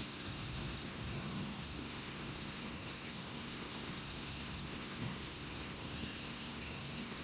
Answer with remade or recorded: remade